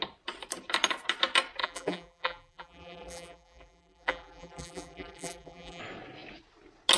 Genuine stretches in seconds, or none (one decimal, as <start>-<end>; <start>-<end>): 0.0-1.6; 5.8-7.0